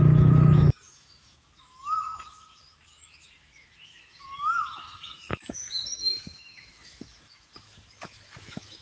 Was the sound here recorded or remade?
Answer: remade